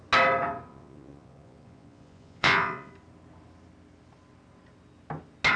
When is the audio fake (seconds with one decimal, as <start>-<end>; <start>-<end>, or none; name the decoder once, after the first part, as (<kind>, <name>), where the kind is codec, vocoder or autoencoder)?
0.7-2.9 (vocoder, Vocos)